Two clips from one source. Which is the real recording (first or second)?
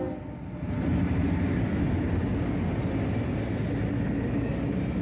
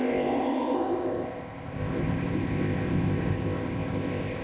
first